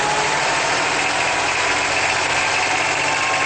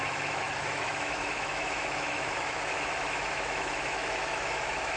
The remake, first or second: second